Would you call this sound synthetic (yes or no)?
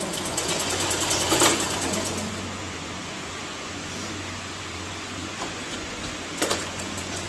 yes